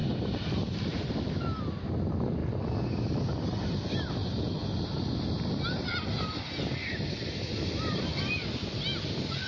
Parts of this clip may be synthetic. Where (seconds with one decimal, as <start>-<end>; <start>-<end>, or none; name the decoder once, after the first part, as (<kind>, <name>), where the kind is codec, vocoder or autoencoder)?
none